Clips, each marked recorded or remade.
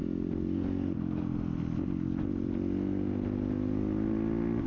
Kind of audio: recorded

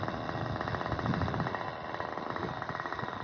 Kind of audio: recorded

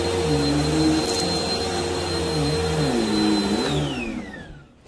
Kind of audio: recorded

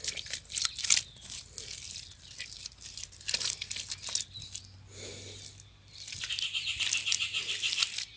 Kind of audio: recorded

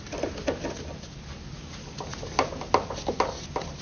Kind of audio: recorded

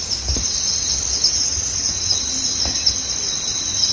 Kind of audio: recorded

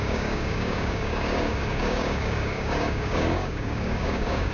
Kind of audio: remade